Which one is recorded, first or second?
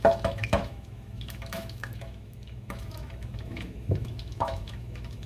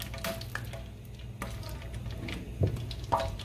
second